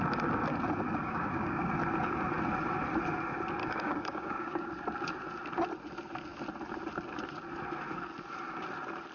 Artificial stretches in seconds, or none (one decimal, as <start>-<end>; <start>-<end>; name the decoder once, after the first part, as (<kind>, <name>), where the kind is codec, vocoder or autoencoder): 1.0-1.7 (codec, DAC); 3.6-4.7